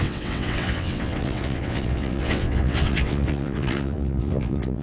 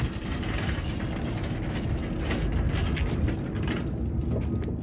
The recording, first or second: second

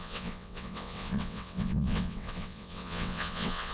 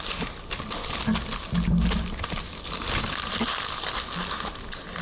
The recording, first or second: second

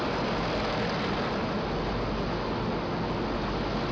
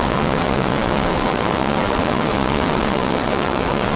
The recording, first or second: first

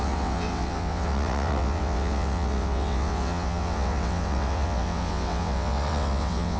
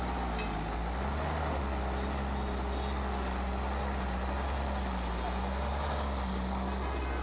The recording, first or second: second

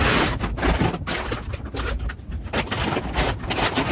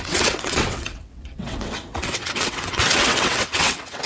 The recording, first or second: first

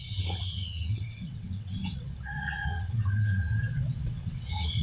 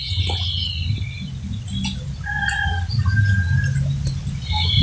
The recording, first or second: second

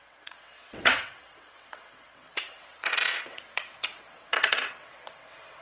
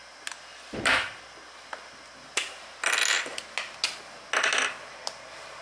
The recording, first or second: second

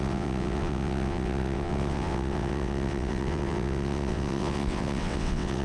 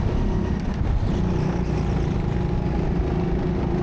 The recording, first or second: second